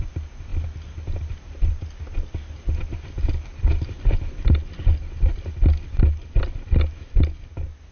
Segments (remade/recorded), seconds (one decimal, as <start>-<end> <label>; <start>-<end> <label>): 0.0-7.9 recorded